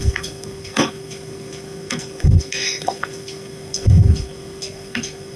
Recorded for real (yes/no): no